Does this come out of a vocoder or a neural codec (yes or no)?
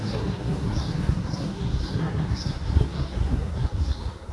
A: yes